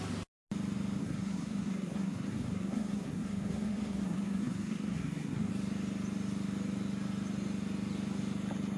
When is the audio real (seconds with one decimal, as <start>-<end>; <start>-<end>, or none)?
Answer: 0.0-1.0; 5.5-8.8